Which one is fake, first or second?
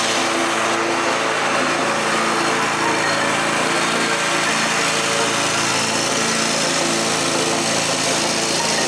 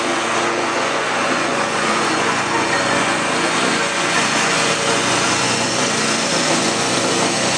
second